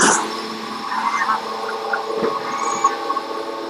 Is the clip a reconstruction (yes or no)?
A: no